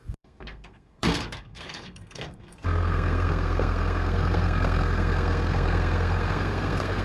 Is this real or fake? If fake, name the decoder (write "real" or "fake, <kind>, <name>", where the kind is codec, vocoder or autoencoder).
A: fake, codec, SNAC